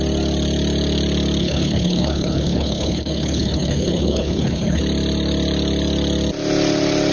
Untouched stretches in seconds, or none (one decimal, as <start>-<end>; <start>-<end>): 0.0-1.4; 4.8-7.1